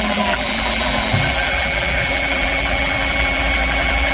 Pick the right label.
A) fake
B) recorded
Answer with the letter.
A